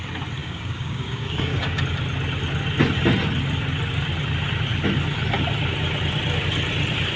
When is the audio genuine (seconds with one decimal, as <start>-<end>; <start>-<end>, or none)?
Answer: 0.0-0.4; 1.8-7.2